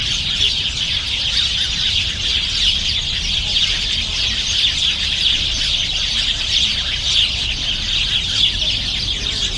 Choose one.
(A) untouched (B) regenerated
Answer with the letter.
A